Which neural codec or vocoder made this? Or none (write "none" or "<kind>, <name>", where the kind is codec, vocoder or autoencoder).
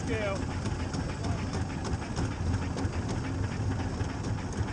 none